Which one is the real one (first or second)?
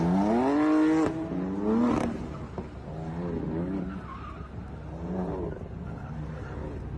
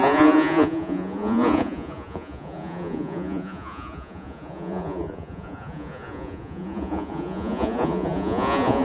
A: first